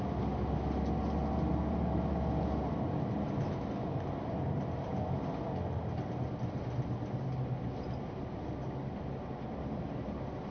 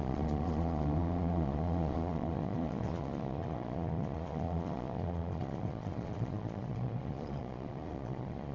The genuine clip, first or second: first